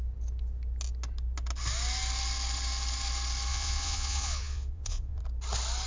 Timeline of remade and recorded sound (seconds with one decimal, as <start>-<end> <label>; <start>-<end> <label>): 0.0-3.5 recorded; 3.5-5.2 remade; 5.2-5.9 recorded